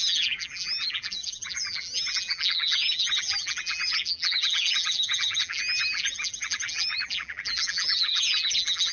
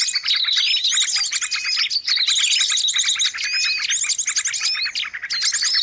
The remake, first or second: first